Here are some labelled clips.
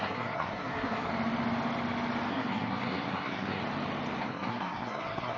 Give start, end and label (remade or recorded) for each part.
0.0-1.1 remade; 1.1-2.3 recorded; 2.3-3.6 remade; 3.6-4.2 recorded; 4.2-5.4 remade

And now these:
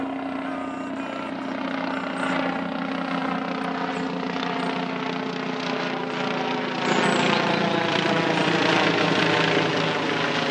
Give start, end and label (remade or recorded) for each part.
0.0-10.5 recorded